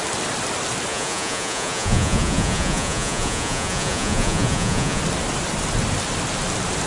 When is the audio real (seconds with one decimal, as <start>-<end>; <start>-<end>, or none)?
0.0-0.9; 5.0-6.9